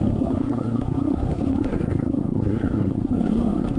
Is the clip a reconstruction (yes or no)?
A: yes